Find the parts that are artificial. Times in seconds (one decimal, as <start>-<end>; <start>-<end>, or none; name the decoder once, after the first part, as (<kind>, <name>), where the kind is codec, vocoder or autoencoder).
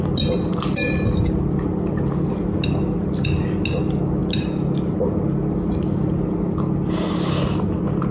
none